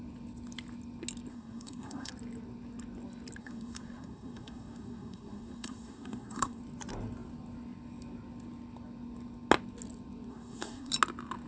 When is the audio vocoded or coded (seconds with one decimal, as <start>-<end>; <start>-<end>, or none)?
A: 1.3-2.1; 3.4-6.6; 10.3-10.9